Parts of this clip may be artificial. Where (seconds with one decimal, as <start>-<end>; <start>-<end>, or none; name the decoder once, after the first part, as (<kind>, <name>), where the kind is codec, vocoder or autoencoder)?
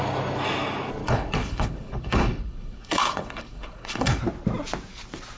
1.0-4.2 (codec, HILCodec)